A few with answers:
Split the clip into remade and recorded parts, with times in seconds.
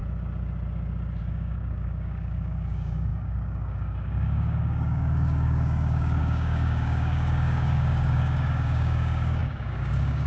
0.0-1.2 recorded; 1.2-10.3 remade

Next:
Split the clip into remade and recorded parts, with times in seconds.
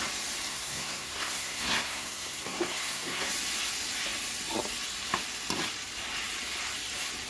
0.0-0.5 recorded; 0.5-3.3 remade; 3.3-7.3 recorded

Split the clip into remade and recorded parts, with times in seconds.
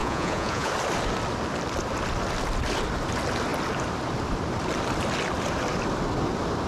0.0-0.7 remade; 0.7-6.7 recorded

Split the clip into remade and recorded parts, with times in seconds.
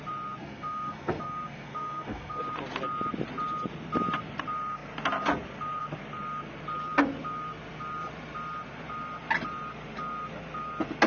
0.0-0.4 recorded; 0.4-2.4 remade; 2.4-11.1 recorded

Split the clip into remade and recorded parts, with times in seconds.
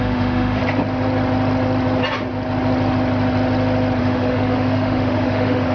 0.0-0.6 remade; 0.6-4.0 recorded; 4.0-5.7 remade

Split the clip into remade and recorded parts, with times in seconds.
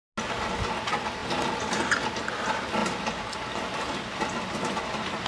0.0-5.3 recorded